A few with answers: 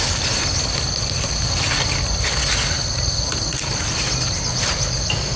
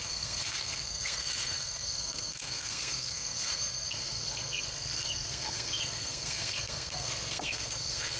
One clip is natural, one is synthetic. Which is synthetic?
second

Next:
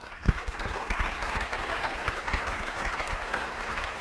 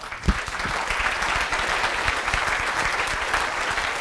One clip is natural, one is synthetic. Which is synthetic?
first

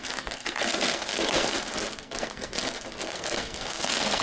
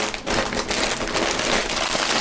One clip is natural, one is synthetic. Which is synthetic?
first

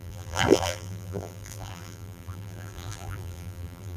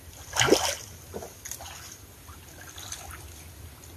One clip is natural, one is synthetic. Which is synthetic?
first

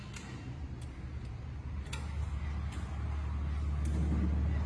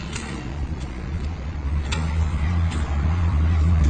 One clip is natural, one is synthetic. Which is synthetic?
second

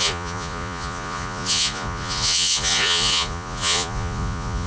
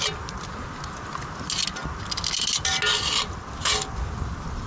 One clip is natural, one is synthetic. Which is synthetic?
first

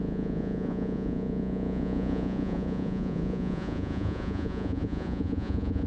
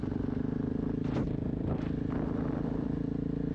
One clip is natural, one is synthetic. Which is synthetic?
first